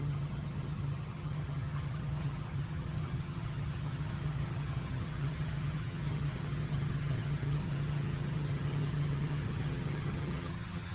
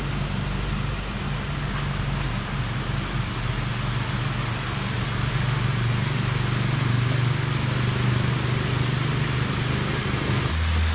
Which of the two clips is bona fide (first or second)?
second